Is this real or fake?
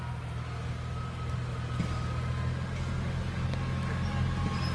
real